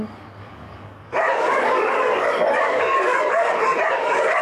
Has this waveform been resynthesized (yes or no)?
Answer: yes